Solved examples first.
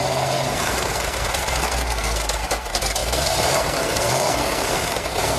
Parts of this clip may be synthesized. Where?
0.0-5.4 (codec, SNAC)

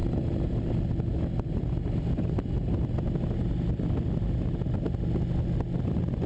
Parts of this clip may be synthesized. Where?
none